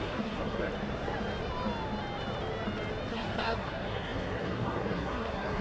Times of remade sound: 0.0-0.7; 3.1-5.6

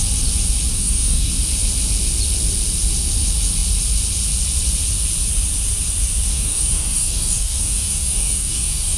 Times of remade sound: 0.7-1.3; 6.3-9.0

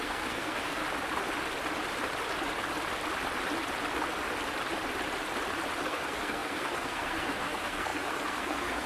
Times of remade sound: 0.0-0.8; 5.8-8.9

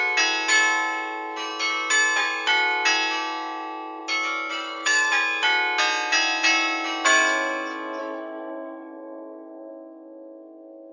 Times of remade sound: 4.5-5.1; 8.0-9.7

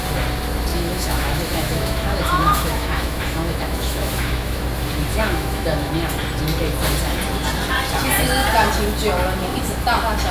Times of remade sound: 0.7-4.6; 5.1-5.9

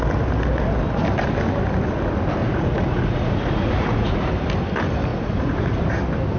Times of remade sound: 2.4-4.3; 5.1-5.8

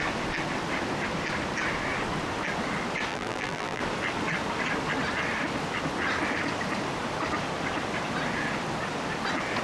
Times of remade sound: 3.1-3.8

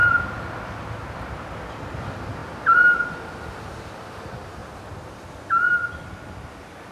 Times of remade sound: none